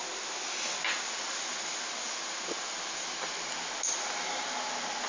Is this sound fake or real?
real